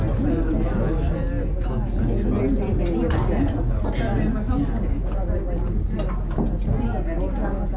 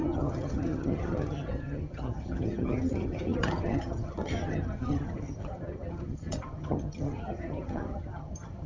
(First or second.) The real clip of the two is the first